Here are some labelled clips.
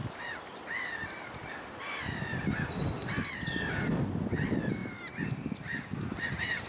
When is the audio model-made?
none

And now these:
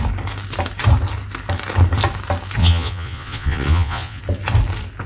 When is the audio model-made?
2.6-4.2 (vocoder, Vocos)

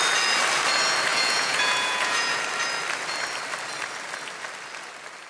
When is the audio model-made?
1.1-2.4 (vocoder, Vocos)

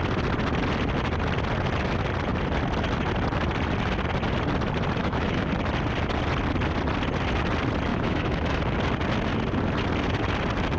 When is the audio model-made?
5.0-5.5 (autoencoder, DAC-VAE); 7.9-8.6

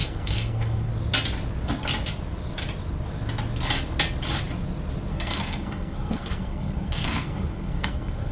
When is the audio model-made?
0.0-0.9 (codec, SNAC); 5.1-8.3

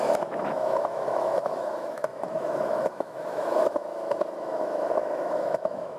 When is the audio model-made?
0.0-6.0 (autoencoder, DAC-VAE)

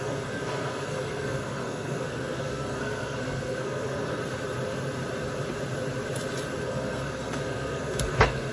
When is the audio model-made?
0.0-4.2 (codec, SNAC); 6.6-8.5